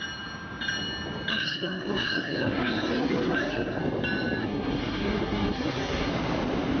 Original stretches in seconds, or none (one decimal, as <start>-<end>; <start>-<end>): 0.0-1.3; 3.8-4.4; 6.1-6.8